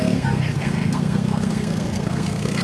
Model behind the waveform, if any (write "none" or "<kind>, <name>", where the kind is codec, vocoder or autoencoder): codec, SNAC